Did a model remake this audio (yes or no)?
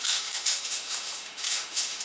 yes